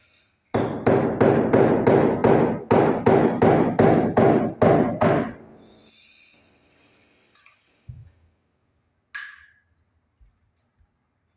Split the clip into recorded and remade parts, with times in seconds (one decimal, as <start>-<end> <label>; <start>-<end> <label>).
0.0-11.4 recorded

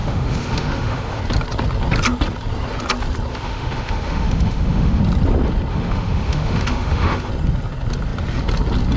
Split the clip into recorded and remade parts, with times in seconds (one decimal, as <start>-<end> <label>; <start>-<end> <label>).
0.0-1.2 remade; 1.2-3.3 recorded; 3.3-5.0 remade; 5.0-5.7 recorded; 5.7-7.3 remade; 7.3-9.0 recorded

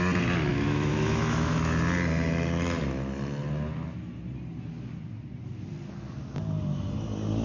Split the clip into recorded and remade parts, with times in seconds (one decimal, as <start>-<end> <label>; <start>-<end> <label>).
0.0-0.5 recorded; 0.5-1.5 remade; 1.5-7.4 recorded